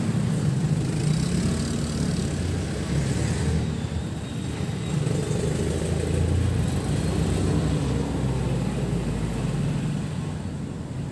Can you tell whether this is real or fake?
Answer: real